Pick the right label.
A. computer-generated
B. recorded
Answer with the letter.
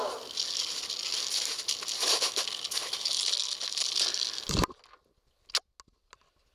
B